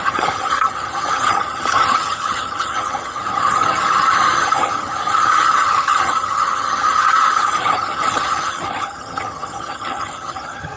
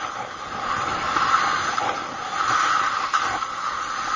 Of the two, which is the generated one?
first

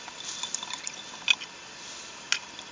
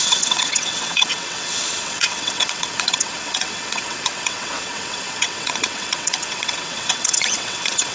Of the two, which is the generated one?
second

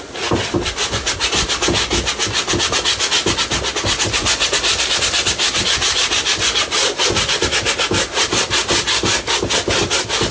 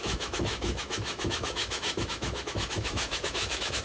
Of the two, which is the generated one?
second